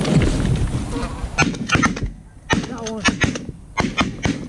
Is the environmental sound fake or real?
real